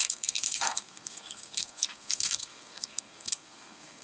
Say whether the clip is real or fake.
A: fake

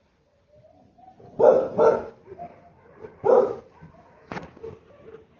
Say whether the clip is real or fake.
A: real